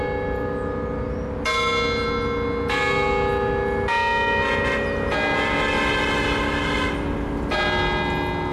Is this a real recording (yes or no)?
yes